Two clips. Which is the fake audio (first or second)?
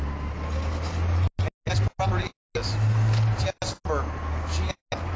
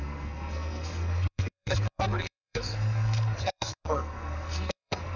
second